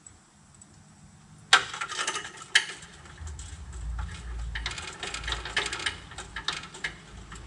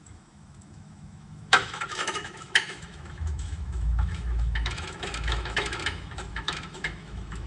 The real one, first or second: first